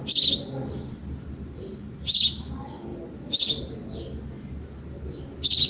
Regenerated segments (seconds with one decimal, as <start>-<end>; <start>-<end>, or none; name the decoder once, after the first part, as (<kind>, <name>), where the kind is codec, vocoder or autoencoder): none